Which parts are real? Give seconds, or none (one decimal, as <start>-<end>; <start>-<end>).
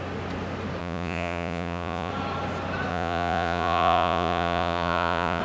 0.0-0.8; 2.1-2.9